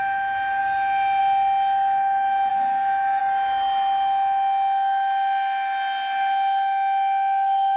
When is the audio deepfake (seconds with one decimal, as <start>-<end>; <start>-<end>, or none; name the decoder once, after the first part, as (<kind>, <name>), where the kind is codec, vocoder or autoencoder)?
2.5-3.2 (codec, SNAC)